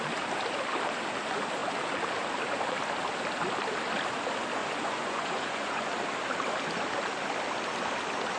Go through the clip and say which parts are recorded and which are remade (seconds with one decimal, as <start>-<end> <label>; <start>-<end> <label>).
0.0-4.6 recorded; 4.6-5.9 remade; 5.9-8.4 recorded